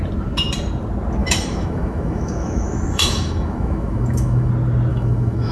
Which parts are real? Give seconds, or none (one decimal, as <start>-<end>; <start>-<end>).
0.0-1.2; 4.5-4.9

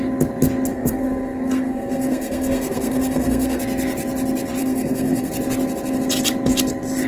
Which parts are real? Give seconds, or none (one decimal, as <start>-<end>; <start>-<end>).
0.0-0.7; 3.6-4.6; 5.3-7.1